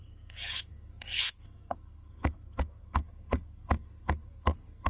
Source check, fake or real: fake